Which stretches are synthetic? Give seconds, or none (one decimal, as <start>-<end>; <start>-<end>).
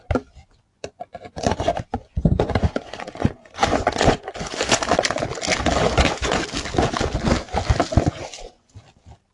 0.4-4.8; 5.8-6.4; 8.1-8.7